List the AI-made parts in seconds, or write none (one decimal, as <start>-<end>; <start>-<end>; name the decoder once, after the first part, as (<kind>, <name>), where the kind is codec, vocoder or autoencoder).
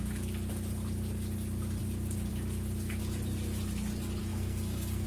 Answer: 4.2-5.1 (codec, SNAC)